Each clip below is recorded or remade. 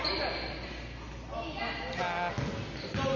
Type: recorded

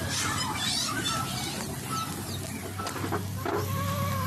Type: recorded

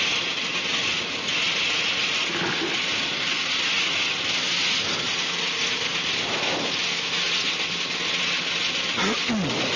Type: recorded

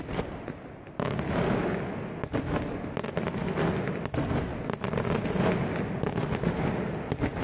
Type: recorded